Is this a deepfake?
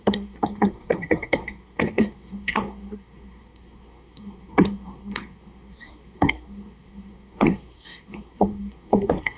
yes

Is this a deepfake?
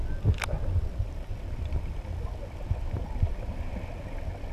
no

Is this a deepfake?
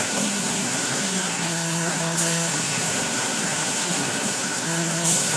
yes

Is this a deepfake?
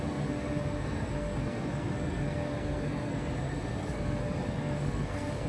yes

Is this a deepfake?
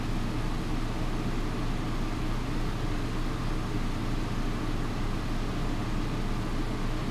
no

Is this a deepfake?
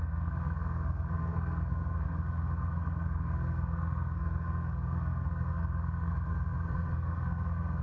yes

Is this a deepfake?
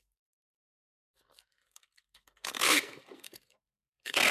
yes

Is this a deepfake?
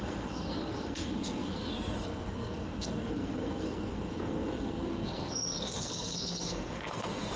yes